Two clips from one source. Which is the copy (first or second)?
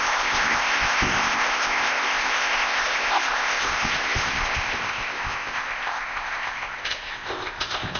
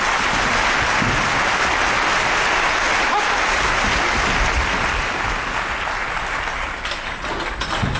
first